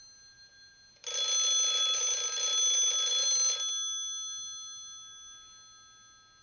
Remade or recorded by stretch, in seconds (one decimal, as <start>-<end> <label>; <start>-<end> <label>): 0.0-6.4 recorded